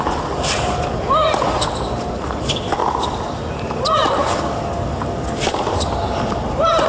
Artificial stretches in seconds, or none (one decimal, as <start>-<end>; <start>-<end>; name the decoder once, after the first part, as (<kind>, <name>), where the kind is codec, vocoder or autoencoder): none